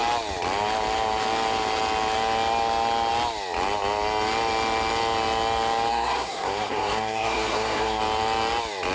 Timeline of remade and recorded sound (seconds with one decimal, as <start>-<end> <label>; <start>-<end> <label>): 0.0-5.9 recorded; 5.9-8.0 remade; 8.0-8.9 recorded